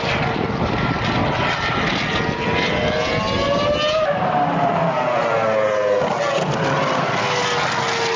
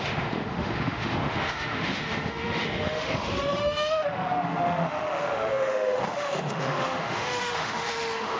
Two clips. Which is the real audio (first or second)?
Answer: first